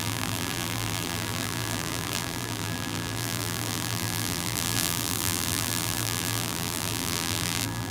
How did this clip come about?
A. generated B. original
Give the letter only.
A